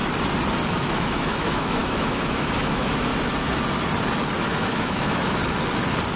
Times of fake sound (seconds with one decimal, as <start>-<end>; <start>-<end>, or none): 0.7-3.1; 4.5-5.4